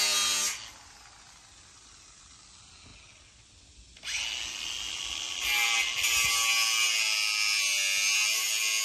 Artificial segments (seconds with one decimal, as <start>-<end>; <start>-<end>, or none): none